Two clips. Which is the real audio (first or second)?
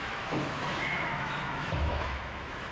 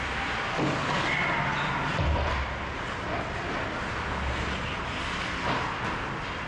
second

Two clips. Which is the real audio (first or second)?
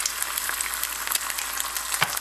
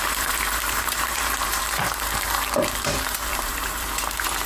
first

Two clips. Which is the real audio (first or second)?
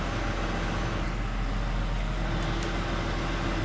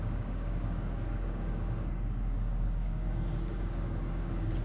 first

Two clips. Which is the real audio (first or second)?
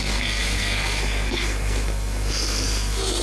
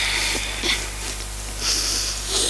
second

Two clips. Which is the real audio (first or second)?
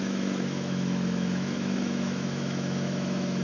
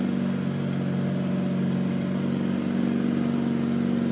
second